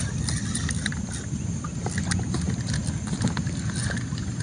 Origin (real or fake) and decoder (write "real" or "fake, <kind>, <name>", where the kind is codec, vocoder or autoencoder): real